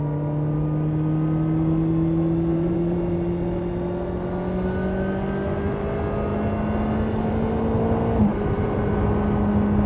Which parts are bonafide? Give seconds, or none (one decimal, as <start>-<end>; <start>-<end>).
0.0-2.5; 3.3-8.3; 8.8-9.9